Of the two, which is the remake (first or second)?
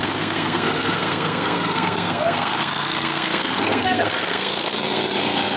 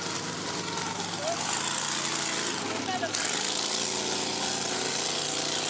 first